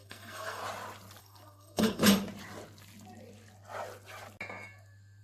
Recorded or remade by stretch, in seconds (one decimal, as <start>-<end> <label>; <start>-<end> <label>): 0.0-0.6 remade; 0.6-1.2 recorded; 1.2-2.0 remade; 2.0-5.2 recorded